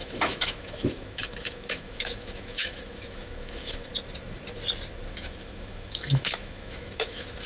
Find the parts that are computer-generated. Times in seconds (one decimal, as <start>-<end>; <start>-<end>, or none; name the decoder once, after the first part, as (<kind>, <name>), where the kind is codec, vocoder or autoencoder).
0.0-3.9 (autoencoder, DAC-VAE); 5.1-7.5